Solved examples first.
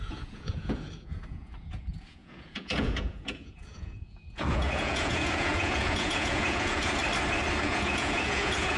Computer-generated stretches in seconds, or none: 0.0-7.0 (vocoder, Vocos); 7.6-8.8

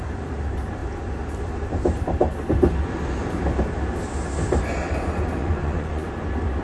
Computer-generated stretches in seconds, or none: 5.4-6.1 (vocoder, Vocos)

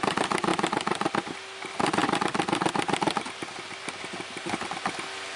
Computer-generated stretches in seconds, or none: none

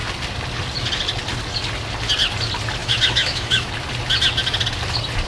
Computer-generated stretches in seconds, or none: 2.8-3.7 (autoencoder, DAC-VAE)

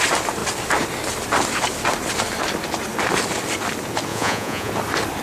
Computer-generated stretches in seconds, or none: 4.1-4.7 (vocoder, Vocos)

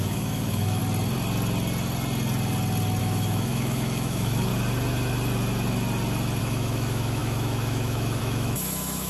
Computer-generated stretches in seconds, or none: 0.0-0.8 (autoencoder, DAC-VAE); 3.0-4.5; 6.4-9.1

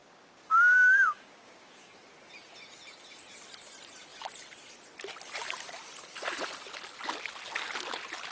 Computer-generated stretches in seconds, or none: 0.0-1.9 (codec, DAC)

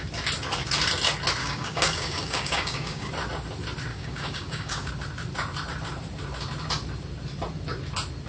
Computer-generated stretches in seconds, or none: 1.4-3.1 (codec, DAC); 3.9-4.9